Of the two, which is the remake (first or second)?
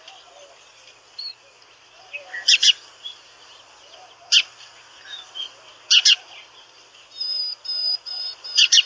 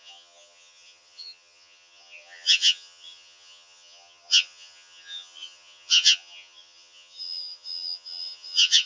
second